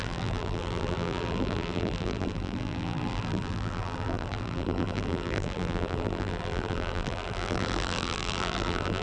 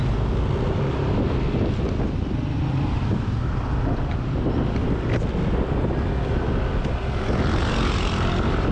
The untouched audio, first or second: second